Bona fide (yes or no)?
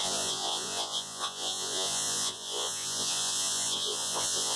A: no